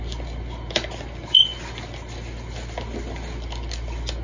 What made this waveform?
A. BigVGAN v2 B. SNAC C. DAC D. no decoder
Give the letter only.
D